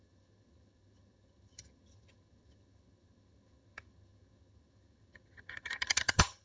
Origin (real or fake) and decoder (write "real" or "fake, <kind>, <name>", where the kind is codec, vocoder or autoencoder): fake, vocoder, HiFi-GAN